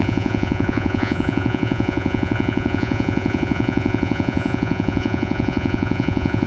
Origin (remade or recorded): remade